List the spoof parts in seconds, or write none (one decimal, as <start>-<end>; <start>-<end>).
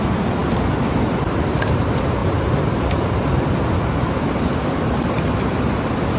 0.0-6.2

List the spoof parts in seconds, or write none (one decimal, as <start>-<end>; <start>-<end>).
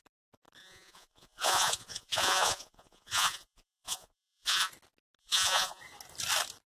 0.6-4.7; 5.2-5.8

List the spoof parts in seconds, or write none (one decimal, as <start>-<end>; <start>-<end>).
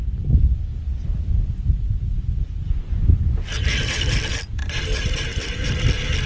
4.6-5.7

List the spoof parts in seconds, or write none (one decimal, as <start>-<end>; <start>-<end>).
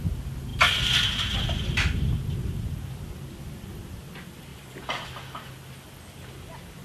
4.5-5.5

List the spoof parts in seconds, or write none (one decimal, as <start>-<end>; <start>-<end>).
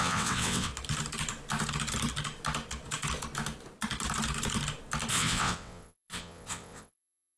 0.0-0.7; 5.1-7.4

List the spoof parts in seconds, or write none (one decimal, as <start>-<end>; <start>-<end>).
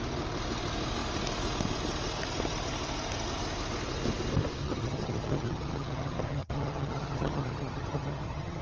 4.6-8.6